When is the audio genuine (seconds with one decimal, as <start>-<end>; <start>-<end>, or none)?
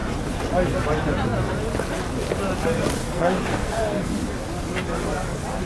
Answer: 0.0-3.0; 4.2-5.7